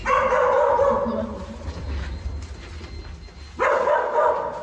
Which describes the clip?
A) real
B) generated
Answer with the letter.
A